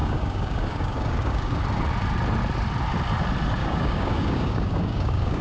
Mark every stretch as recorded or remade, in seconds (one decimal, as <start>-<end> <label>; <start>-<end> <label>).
0.0-1.6 remade; 1.6-3.6 recorded; 3.6-5.4 remade